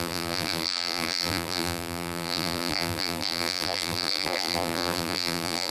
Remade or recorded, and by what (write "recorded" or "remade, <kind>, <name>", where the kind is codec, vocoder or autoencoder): remade, vocoder, BigVGAN v2